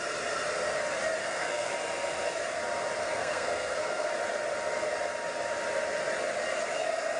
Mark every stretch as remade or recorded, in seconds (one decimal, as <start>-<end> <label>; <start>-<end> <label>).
0.0-1.2 recorded; 1.2-1.7 remade; 1.7-3.0 recorded; 3.0-4.1 remade; 4.1-7.2 recorded

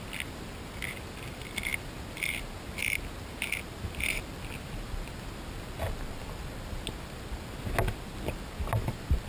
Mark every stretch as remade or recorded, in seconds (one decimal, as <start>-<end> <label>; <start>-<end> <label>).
0.0-9.3 recorded